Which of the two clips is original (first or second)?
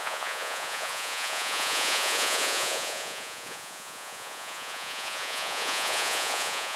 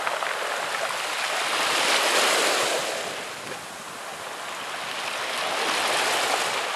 second